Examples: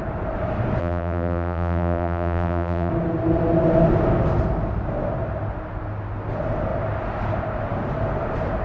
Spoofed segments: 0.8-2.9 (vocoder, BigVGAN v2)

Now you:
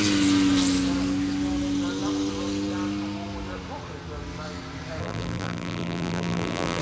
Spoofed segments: 5.0-6.8 (vocoder, BigVGAN v2)